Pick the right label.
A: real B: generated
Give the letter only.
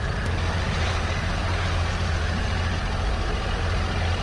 A